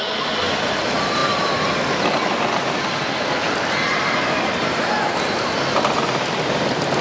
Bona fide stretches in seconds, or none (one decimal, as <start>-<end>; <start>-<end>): 0.0-7.0